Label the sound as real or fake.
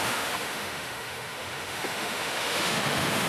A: fake